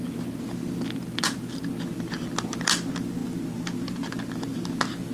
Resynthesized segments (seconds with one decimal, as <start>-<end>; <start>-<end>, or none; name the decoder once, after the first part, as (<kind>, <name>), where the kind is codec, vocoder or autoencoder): none